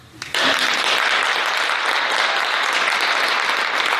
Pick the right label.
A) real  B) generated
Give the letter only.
A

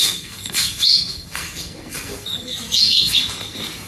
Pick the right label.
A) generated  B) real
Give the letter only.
A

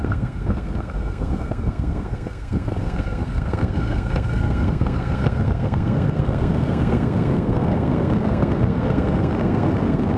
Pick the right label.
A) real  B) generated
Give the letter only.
B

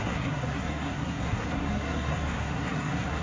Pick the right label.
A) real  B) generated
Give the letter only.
B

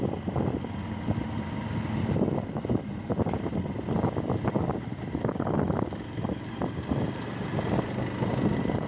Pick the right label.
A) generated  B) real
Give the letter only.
B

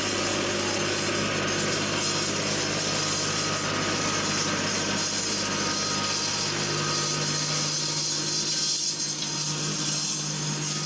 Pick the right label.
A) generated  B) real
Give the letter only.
B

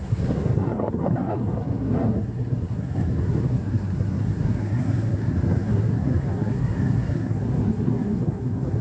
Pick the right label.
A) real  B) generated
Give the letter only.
B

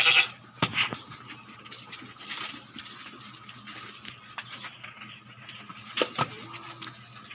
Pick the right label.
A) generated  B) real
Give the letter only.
B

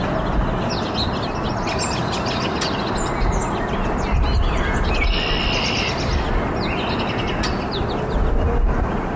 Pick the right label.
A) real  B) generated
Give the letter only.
A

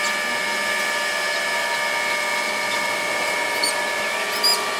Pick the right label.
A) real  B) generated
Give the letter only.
A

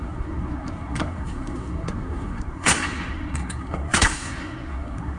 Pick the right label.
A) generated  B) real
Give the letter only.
A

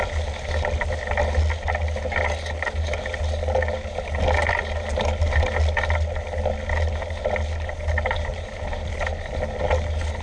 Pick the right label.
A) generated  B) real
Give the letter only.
B